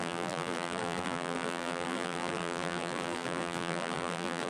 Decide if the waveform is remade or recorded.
remade